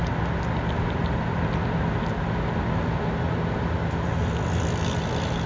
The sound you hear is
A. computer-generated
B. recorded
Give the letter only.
B